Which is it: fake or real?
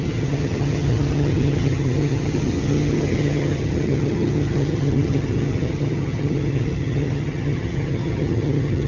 fake